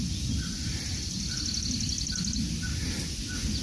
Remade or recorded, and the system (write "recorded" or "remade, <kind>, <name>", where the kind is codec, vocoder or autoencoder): recorded